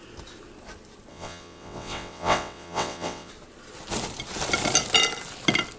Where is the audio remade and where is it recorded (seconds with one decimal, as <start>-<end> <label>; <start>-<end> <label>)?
0.0-1.1 recorded; 1.1-3.3 remade; 3.3-5.8 recorded